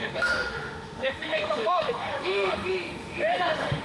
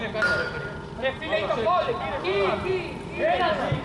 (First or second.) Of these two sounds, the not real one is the first